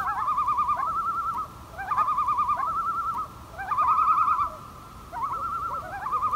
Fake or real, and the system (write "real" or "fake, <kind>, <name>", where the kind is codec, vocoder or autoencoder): real